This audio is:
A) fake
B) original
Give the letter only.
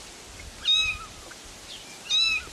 B